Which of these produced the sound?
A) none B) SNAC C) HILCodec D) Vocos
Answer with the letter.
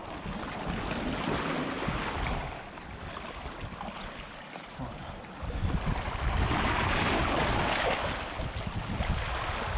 A